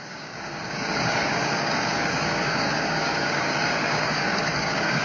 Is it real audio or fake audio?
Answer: fake